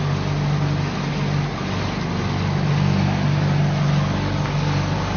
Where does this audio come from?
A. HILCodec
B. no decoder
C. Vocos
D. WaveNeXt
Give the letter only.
B